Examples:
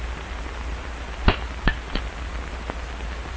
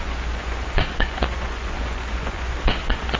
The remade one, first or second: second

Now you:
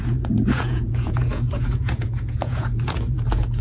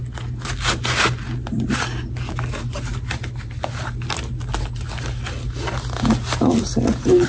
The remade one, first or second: first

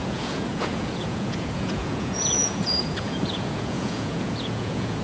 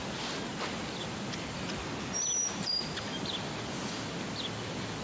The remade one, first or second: first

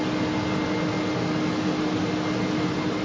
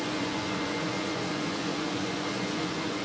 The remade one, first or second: second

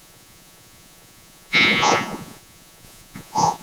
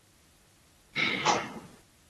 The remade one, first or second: first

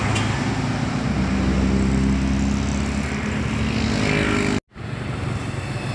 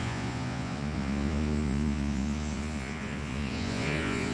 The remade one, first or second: second